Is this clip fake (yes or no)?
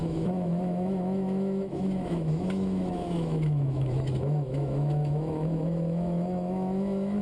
yes